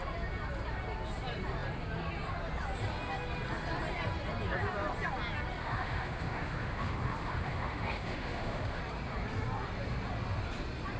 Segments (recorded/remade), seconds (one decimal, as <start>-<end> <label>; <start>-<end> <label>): 0.0-5.6 recorded; 5.6-8.8 remade; 8.8-11.0 recorded